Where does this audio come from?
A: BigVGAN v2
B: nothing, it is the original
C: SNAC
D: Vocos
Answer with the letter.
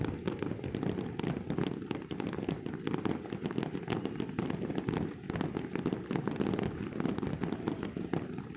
B